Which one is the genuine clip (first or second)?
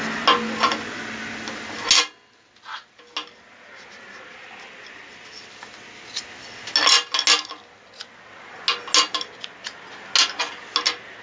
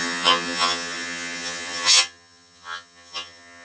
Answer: first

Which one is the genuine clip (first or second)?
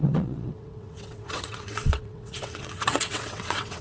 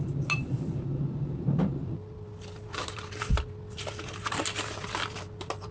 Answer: second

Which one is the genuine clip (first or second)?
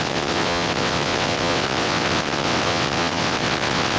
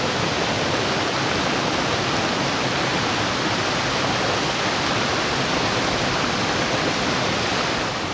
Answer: second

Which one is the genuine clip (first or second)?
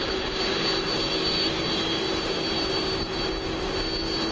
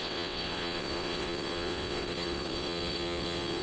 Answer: first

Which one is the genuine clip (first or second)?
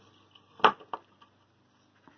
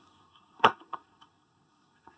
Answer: first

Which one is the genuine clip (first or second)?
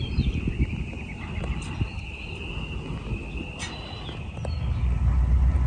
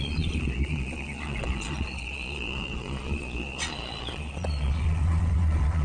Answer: first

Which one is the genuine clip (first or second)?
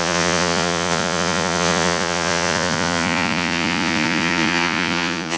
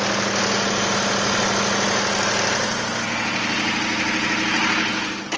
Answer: second